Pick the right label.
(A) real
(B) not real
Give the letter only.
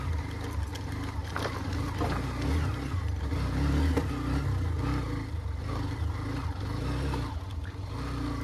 A